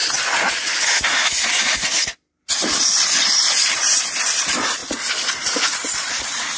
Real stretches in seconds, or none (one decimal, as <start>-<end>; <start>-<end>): 0.0-4.0